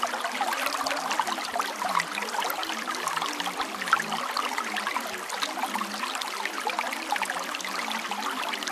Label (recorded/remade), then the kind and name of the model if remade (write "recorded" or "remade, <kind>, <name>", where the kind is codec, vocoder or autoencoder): recorded